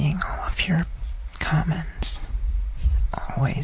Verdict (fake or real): fake